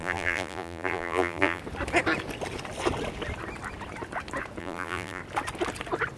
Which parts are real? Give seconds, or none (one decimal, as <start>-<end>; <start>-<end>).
1.6-4.6; 5.2-6.2